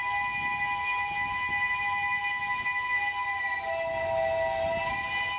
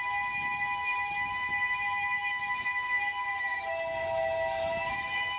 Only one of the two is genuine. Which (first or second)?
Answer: first